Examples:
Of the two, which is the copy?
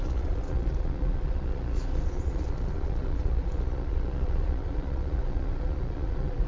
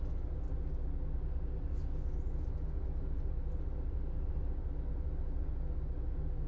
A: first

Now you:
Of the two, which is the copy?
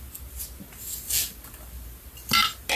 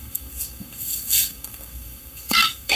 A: second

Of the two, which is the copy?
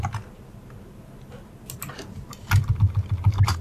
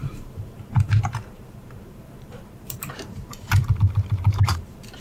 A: second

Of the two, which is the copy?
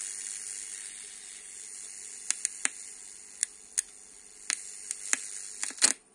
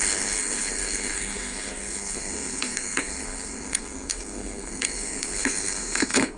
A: second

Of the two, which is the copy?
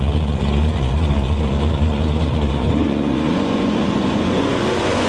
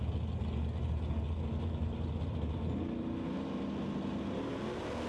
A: first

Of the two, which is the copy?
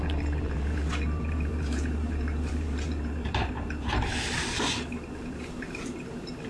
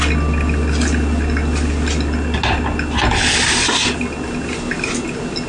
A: first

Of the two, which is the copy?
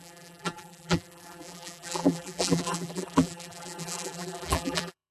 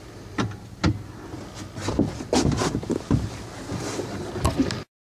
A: first